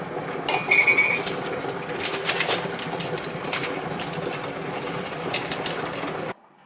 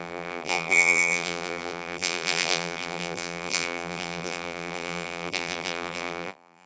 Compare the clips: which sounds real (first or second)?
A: first